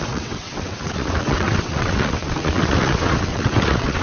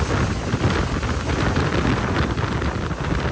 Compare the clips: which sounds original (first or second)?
second